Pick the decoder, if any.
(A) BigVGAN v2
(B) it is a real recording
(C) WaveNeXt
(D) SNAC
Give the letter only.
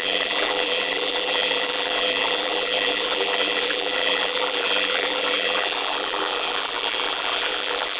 A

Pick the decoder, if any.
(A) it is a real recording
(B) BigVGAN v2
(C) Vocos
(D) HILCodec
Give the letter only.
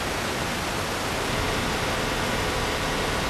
A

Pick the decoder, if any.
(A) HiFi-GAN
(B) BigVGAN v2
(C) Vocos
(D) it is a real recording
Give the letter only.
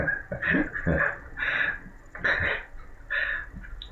D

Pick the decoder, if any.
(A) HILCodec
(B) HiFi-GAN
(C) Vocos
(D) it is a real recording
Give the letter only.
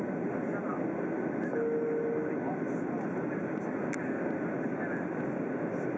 D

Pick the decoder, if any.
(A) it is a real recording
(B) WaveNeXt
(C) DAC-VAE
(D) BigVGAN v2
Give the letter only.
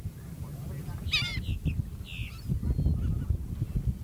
A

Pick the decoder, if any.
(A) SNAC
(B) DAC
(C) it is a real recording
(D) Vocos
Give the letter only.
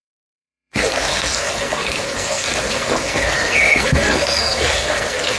A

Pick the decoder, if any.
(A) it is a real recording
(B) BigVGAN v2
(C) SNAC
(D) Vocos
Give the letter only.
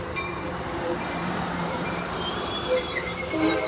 B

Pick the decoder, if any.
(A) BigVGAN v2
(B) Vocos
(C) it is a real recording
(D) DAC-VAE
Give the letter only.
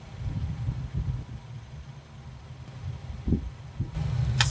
C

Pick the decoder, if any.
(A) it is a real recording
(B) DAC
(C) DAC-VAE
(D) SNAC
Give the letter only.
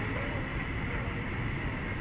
A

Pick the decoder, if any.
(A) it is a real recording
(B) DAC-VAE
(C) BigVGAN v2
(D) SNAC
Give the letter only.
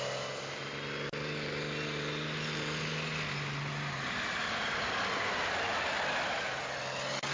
A